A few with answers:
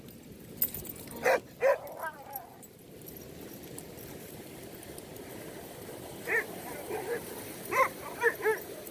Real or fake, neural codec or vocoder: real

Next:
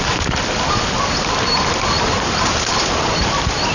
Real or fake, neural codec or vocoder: fake, vocoder, BigVGAN v2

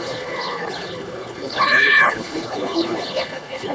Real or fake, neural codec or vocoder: fake, codec, HILCodec